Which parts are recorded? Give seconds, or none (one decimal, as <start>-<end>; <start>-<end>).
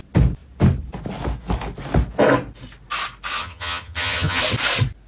0.0-3.4; 4.4-5.1